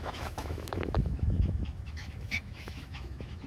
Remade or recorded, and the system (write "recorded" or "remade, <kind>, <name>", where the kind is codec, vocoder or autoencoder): remade, autoencoder, DAC-VAE